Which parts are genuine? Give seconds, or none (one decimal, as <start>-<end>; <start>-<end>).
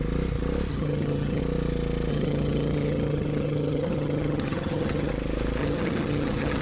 0.0-0.7; 1.4-2.1; 5.1-5.6